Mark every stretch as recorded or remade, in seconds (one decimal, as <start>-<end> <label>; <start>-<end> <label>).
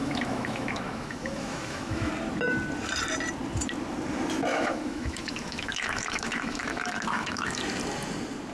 0.0-2.1 remade; 2.1-4.5 recorded; 4.5-7.6 remade; 7.6-8.5 recorded